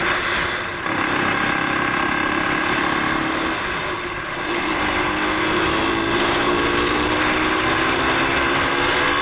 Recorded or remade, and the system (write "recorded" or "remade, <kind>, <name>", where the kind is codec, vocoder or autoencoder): recorded